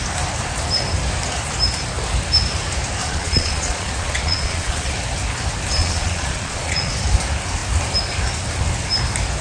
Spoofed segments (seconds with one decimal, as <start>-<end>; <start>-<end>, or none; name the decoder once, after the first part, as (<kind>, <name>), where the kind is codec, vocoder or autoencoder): 3.0-4.9 (vocoder, Vocos); 5.8-6.9

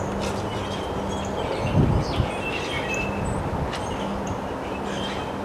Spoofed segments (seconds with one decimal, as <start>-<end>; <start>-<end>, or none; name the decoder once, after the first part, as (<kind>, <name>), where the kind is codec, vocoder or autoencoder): none

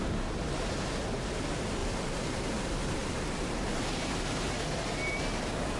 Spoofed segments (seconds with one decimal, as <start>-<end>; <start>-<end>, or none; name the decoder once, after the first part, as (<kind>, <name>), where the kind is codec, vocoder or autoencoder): 1.8-2.6 (vocoder, BigVGAN v2); 3.0-3.8

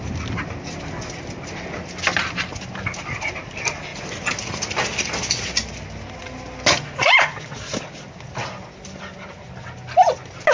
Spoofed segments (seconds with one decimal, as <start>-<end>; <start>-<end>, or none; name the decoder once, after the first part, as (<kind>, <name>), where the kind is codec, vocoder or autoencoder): none

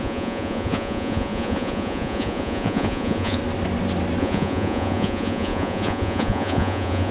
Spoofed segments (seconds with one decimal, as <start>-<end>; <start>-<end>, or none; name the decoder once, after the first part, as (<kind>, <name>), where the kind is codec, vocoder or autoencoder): 0.0-3.4 (vocoder, Vocos); 4.2-7.1

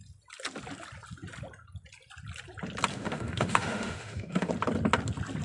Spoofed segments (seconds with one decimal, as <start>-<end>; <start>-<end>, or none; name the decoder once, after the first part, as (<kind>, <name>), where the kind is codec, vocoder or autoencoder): 2.9-4.5 (autoencoder, DAC-VAE)